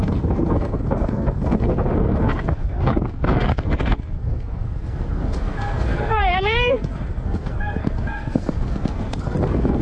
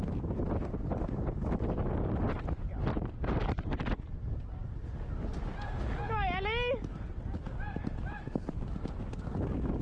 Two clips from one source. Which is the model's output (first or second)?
first